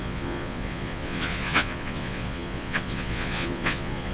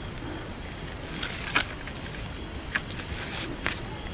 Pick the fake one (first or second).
first